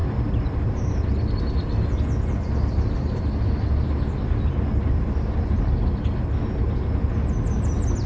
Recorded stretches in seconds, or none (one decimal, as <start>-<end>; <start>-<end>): 0.0-8.1